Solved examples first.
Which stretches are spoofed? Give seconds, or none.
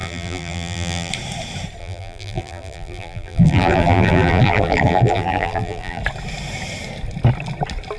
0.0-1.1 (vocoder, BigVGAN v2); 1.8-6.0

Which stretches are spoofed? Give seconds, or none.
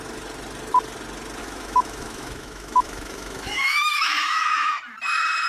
1.4-4.7 (autoencoder, DAC-VAE)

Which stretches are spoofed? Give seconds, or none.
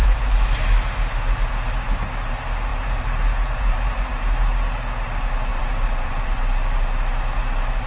2.7-4.4 (vocoder, BigVGAN v2); 5.5-6.4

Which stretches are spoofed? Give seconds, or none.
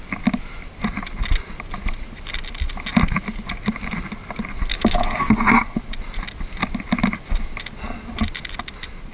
4.7-5.3 (autoencoder, DAC-VAE)